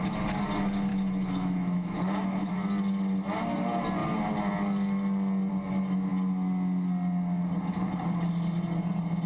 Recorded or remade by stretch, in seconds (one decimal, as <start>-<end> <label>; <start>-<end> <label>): 0.0-0.9 recorded; 0.9-2.5 remade; 2.5-9.3 recorded